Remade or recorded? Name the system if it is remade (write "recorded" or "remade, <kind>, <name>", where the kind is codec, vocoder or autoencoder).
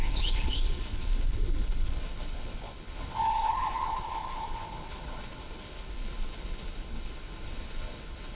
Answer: remade, codec, HILCodec